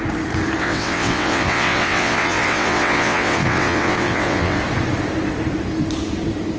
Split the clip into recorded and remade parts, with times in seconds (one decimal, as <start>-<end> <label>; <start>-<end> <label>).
0.0-0.6 recorded; 0.6-4.6 remade; 4.6-6.6 recorded